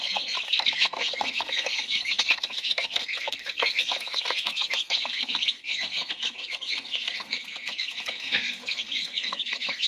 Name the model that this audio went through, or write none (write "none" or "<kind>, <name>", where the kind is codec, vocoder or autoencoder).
codec, SNAC